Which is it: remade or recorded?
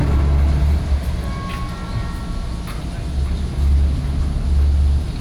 recorded